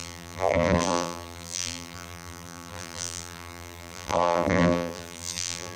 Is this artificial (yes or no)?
yes